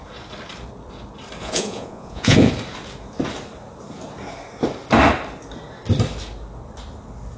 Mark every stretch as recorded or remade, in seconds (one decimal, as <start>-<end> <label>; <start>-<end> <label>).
0.0-1.4 recorded; 1.4-2.5 remade; 2.5-7.4 recorded